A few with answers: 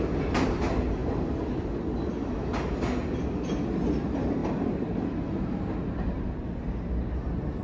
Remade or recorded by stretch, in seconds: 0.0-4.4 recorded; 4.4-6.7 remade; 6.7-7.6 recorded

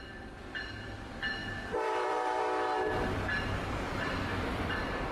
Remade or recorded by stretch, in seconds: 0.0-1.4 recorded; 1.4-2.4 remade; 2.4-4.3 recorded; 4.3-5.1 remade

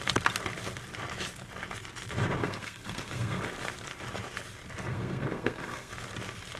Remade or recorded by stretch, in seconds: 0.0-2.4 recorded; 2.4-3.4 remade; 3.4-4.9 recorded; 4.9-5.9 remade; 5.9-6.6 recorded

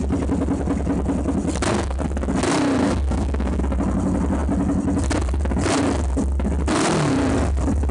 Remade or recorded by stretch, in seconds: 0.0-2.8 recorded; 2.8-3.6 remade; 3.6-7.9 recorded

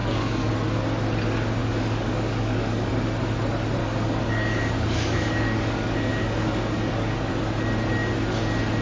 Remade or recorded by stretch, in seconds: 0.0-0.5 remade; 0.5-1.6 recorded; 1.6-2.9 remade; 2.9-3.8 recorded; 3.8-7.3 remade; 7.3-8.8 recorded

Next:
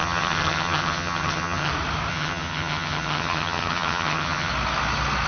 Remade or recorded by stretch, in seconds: 0.0-1.7 remade; 1.7-2.1 recorded; 2.1-4.5 remade; 4.5-5.3 recorded